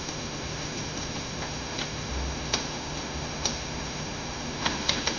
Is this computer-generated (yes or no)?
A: yes